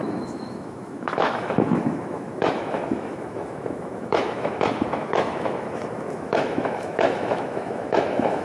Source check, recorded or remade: remade